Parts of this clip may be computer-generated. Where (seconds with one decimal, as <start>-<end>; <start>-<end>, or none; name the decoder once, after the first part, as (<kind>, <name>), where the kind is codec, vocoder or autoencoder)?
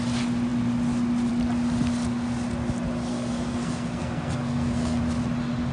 3.1-5.0 (codec, SNAC)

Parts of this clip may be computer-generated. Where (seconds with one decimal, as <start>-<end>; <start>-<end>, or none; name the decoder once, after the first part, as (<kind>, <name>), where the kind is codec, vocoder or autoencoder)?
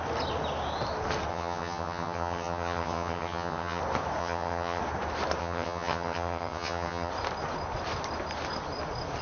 1.3-3.8 (vocoder, HiFi-GAN); 4.2-4.8; 5.4-7.1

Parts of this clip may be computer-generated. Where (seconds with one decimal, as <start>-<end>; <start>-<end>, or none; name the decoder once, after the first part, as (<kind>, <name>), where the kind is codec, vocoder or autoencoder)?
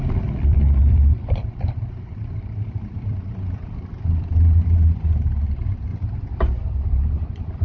0.0-3.8 (vocoder, BigVGAN v2)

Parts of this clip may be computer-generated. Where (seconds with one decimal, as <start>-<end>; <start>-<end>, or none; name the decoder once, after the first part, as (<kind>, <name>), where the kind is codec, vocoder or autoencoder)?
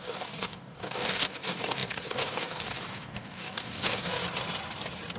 0.0-4.2 (codec, DAC)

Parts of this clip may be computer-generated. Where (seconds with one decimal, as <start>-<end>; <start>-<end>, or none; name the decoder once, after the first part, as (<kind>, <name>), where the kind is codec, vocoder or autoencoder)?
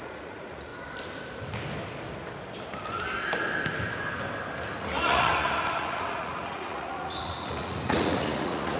0.0-0.7 (vocoder, Vocos); 4.8-8.8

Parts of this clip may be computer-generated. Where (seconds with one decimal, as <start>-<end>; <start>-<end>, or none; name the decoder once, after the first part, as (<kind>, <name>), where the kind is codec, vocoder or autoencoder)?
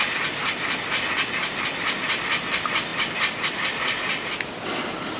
none